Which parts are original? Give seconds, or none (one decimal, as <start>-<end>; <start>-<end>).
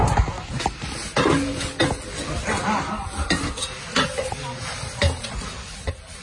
0.0-6.2